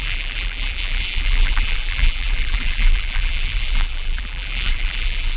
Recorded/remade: remade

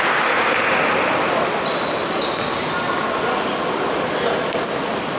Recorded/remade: recorded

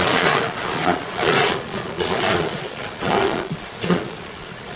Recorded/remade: remade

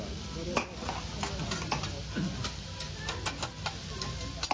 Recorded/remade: recorded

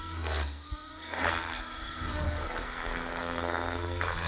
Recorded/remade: remade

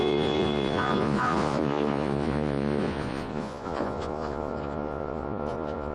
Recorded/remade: remade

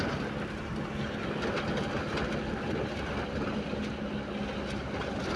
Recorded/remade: recorded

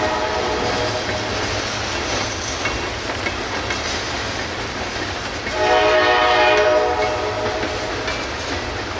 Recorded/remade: recorded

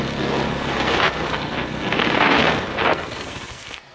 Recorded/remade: remade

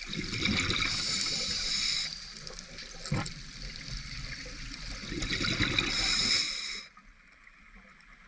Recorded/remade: recorded